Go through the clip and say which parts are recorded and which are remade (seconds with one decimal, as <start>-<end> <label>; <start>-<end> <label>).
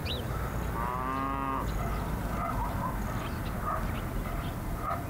0.0-5.1 recorded